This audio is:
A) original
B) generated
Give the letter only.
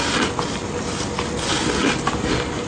A